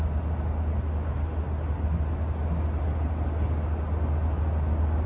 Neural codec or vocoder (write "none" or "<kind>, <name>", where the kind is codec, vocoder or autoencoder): none